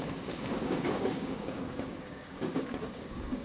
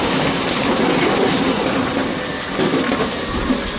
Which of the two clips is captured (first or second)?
second